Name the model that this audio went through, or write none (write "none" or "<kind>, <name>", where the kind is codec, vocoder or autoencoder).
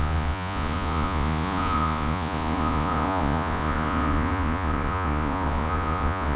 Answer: vocoder, Vocos